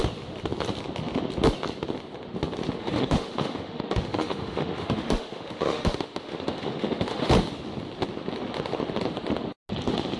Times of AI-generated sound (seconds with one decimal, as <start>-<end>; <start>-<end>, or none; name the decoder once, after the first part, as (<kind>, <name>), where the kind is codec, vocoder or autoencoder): 2.8-7.3 (autoencoder, DAC-VAE)